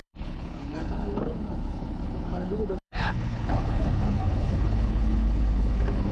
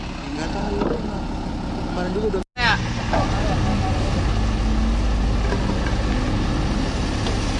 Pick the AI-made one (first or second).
first